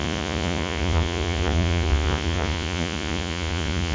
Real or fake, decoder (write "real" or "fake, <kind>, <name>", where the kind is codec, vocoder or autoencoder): fake, vocoder, Vocos